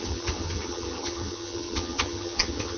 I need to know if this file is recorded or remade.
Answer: remade